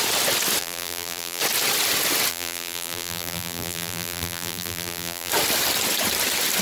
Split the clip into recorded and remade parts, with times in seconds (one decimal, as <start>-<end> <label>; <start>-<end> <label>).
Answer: 0.0-0.6 recorded; 0.6-1.4 remade; 1.4-2.3 recorded; 2.3-5.3 remade; 5.3-6.6 recorded

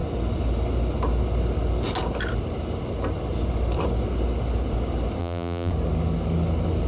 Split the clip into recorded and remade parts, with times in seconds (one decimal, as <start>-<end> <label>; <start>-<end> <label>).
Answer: 0.0-5.2 recorded; 5.2-5.7 remade; 5.7-6.9 recorded

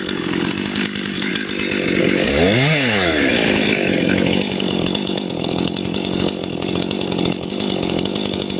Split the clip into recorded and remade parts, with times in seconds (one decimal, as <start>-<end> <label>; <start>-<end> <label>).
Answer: 0.0-1.3 remade; 1.3-2.0 recorded; 2.0-8.6 remade

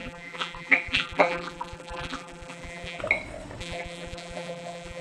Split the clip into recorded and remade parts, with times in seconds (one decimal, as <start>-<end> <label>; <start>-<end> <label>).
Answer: 0.0-3.0 remade; 3.0-3.6 recorded; 3.6-5.0 remade